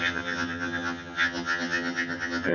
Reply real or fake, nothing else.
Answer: fake